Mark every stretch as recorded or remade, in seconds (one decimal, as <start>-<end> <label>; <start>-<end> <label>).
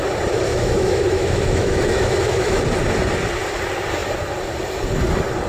0.0-0.5 recorded; 0.5-2.6 remade; 2.6-5.5 recorded